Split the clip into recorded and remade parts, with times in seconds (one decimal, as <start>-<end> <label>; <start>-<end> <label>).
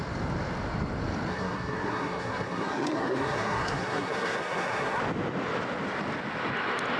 0.0-1.3 recorded; 1.3-5.0 remade; 5.0-7.0 recorded